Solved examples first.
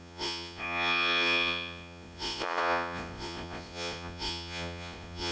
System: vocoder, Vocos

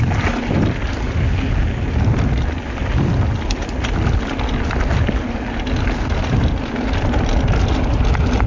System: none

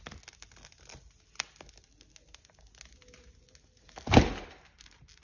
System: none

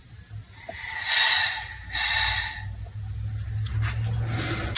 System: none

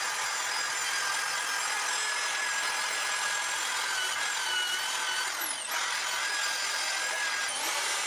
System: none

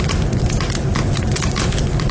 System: none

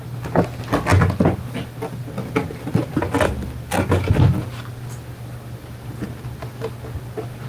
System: none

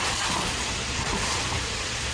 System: vocoder, Vocos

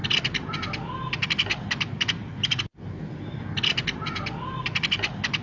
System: none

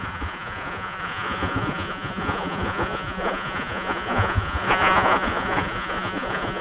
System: vocoder, Vocos